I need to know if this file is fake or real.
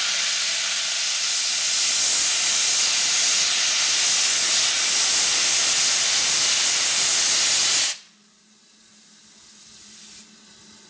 real